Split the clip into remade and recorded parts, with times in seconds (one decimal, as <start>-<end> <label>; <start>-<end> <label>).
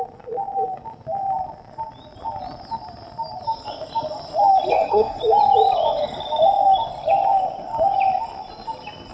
0.0-4.7 recorded; 4.7-5.2 remade; 5.2-9.1 recorded